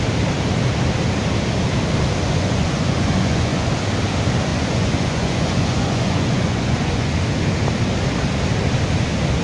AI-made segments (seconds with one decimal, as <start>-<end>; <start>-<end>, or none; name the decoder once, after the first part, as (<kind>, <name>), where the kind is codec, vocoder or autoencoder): 2.2-3.7 (vocoder, Vocos); 4.5-7.1

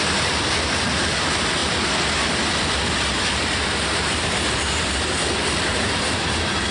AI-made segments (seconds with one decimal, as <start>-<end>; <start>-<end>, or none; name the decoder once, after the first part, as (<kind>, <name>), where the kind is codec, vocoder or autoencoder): none